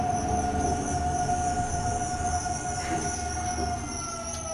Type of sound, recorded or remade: recorded